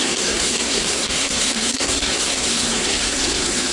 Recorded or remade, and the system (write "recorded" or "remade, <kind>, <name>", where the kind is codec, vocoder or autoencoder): remade, codec, SNAC